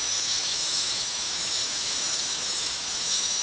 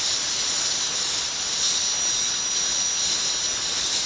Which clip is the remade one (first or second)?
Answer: first